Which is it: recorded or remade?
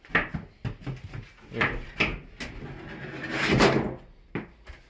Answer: recorded